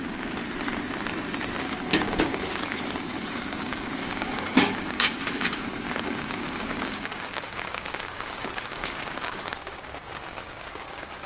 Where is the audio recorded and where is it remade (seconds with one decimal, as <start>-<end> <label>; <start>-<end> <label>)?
0.0-0.4 remade; 0.4-1.6 recorded; 1.6-11.3 remade